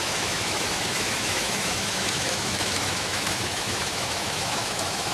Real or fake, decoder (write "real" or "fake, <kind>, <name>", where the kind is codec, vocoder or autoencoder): fake, autoencoder, DAC-VAE